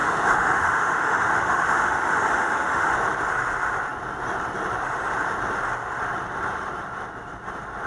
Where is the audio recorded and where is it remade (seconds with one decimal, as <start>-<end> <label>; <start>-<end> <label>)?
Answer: 0.0-2.9 remade; 2.9-7.9 recorded